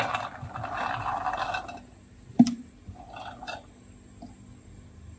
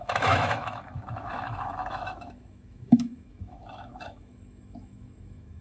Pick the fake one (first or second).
second